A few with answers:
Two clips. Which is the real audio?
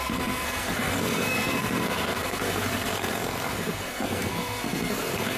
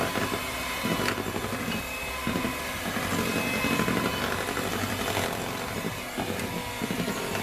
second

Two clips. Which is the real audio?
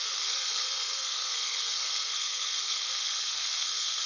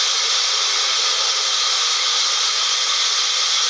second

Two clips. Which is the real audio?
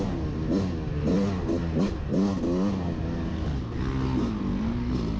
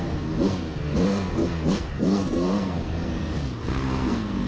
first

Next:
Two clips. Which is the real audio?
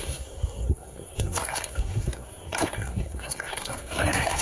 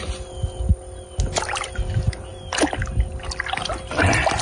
second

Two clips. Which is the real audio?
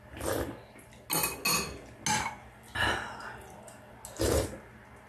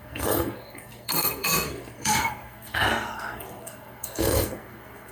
first